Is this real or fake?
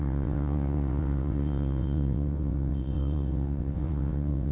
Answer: fake